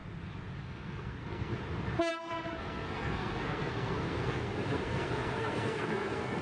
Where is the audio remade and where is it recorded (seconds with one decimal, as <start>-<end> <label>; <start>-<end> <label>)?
0.0-0.6 recorded; 0.6-1.5 remade; 1.5-2.1 recorded; 2.1-6.4 remade